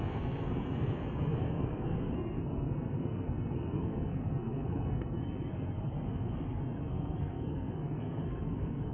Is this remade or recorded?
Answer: remade